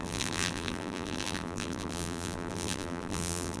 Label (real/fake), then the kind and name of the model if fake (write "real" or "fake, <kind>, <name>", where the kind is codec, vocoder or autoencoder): fake, vocoder, BigVGAN v2